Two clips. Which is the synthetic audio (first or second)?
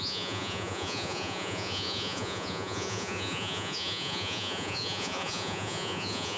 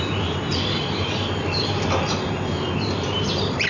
first